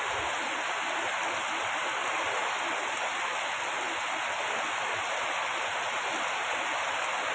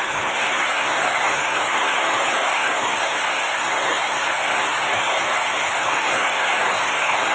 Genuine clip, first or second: first